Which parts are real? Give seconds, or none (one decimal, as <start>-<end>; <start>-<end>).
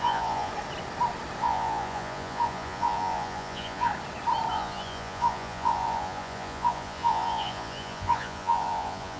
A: 0.5-1.4; 3.9-4.5